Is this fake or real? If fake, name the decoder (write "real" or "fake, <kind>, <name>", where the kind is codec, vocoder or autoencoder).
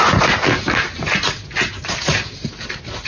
real